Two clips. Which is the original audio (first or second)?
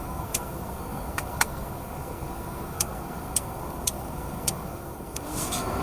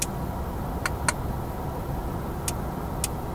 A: second